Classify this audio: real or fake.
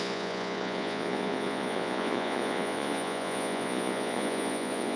fake